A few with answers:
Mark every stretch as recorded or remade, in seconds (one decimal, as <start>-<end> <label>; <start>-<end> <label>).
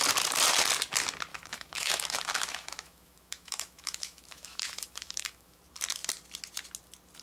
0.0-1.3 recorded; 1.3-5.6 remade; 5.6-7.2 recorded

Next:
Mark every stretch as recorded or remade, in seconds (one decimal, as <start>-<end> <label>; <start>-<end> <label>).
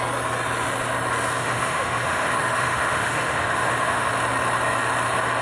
0.0-1.4 recorded; 1.4-4.1 remade; 4.1-5.4 recorded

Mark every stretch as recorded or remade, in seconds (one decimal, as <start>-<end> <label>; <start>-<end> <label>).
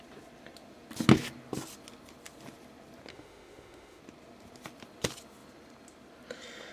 0.0-3.1 recorded; 3.1-4.0 remade; 4.0-6.7 recorded